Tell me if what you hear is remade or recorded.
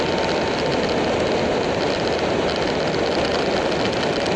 recorded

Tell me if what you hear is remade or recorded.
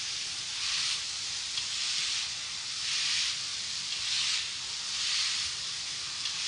recorded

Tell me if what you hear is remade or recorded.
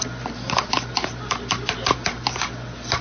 recorded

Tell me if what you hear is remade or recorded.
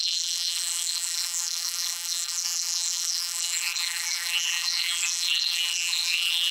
remade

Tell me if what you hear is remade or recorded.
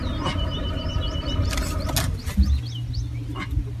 recorded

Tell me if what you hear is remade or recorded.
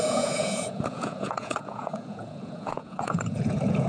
remade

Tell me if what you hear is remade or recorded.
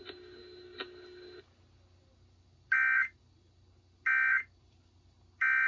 recorded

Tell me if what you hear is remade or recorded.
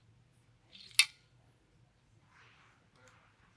recorded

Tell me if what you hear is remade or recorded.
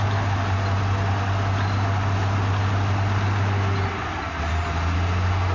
recorded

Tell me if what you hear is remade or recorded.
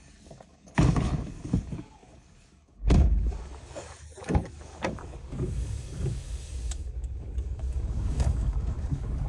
remade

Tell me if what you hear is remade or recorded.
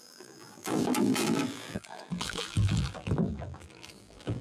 remade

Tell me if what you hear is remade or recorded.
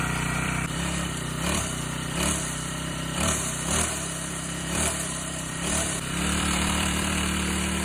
remade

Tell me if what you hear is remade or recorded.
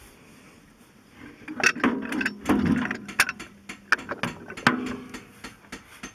recorded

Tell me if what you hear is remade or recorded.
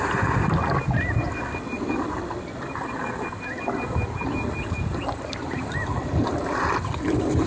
recorded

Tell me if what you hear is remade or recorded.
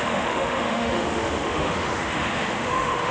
remade